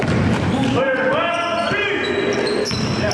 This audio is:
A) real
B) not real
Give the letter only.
A